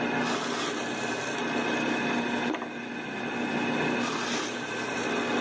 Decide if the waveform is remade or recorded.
recorded